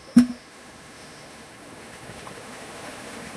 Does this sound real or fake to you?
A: fake